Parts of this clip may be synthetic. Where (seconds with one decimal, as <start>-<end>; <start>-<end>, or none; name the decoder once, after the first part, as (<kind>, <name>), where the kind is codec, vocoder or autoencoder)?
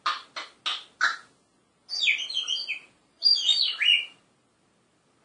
2.8-4.2 (vocoder, BigVGAN v2)